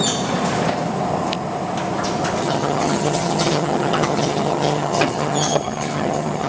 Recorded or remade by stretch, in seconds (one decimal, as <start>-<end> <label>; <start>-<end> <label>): 0.0-2.4 recorded; 2.4-6.5 remade